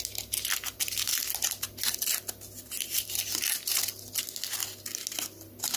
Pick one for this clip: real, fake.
real